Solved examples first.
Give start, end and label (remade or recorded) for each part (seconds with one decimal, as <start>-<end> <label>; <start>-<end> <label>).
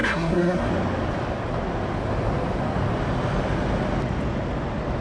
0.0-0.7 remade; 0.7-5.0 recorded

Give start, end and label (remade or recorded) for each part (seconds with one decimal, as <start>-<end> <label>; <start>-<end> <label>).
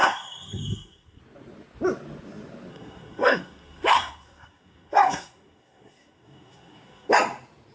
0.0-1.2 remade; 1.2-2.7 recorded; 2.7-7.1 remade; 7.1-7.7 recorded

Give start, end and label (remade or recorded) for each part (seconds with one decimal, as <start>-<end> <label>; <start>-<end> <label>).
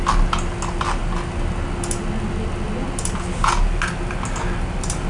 0.0-5.1 recorded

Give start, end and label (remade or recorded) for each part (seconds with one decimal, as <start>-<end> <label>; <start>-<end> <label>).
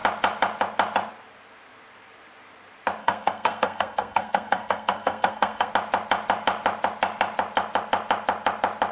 0.0-3.0 recorded; 3.0-5.7 remade; 5.7-8.9 recorded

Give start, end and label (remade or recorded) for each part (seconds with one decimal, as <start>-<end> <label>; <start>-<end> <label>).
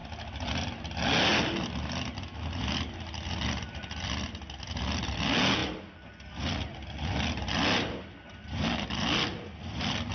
0.0-10.1 recorded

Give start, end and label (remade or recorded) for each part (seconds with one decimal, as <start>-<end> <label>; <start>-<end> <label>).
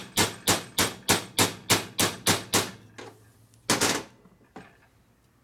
0.0-5.4 recorded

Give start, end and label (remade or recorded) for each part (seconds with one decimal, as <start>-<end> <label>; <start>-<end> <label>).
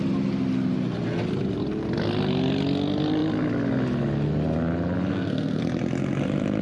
0.0-5.1 recorded; 5.1-5.6 remade; 5.6-6.6 recorded